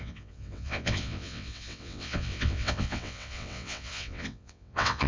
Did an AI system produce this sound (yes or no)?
yes